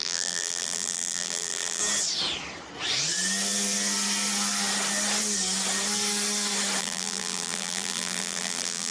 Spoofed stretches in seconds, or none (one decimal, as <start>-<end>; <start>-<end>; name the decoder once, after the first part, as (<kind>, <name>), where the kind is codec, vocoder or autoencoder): 0.0-1.8 (vocoder, BigVGAN v2); 6.8-8.9

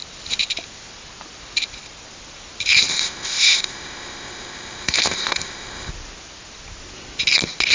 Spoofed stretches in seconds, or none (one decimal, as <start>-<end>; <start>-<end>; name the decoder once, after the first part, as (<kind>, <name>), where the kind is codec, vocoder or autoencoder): 2.9-5.9 (codec, ZipCodec)

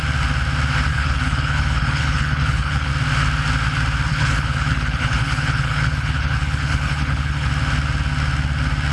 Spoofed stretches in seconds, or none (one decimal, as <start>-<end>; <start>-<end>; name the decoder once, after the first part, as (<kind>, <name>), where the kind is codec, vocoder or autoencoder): 0.9-2.9 (codec, HILCodec); 4.1-7.5

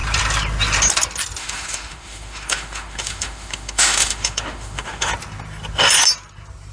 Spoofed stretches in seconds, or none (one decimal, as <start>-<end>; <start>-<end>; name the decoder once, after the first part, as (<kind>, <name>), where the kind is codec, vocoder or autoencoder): 1.4-5.1 (autoencoder, DAC-VAE)

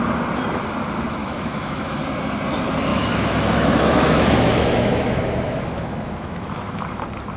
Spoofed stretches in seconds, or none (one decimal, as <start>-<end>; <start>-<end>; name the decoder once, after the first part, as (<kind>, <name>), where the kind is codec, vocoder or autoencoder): 1.2-2.0 (autoencoder, DAC-VAE); 2.9-7.0